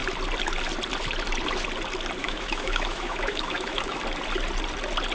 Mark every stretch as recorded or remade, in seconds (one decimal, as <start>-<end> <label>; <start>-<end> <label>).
0.0-2.2 recorded; 2.2-4.0 remade; 4.0-5.1 recorded